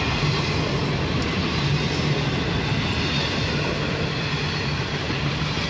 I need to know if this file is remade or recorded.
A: recorded